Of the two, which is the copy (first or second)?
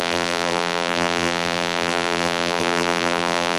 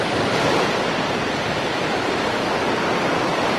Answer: first